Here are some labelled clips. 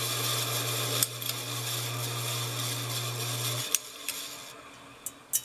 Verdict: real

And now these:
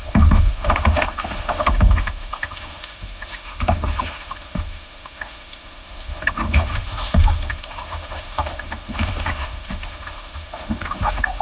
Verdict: fake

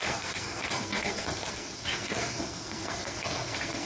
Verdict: fake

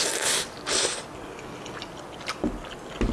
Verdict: real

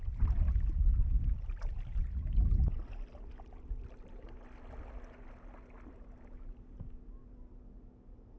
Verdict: real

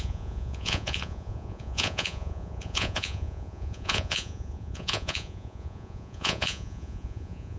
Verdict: fake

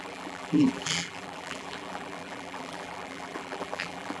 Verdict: fake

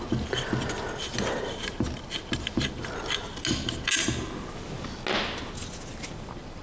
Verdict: real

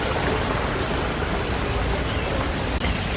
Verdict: real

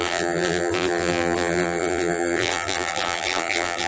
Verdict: fake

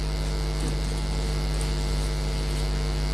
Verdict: real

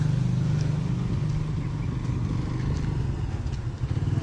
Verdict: real